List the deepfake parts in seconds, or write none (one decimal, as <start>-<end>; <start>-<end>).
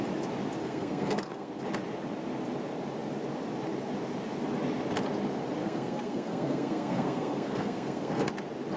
0.6-1.5; 5.6-8.3